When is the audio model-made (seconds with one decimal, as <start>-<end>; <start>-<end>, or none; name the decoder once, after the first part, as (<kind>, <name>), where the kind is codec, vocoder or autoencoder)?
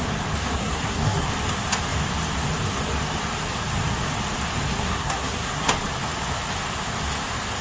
0.5-1.3 (codec, SNAC); 4.7-5.7